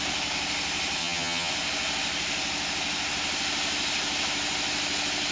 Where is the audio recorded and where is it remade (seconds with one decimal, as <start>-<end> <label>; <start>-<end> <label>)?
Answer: 0.0-1.0 recorded; 1.0-1.5 remade; 1.5-5.3 recorded